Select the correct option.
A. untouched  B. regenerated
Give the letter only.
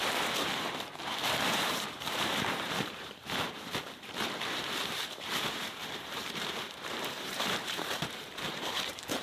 B